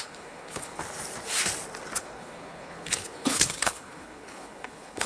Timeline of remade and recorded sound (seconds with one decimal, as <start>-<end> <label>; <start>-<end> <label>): 0.0-0.8 remade; 0.8-2.0 recorded; 2.0-5.1 remade